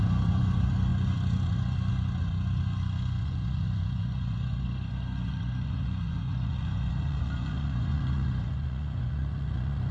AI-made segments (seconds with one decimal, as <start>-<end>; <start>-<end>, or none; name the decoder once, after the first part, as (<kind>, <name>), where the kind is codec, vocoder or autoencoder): 0.0-9.9 (vocoder, Vocos)